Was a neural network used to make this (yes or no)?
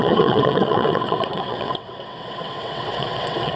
yes